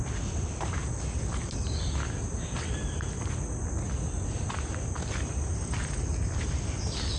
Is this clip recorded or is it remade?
recorded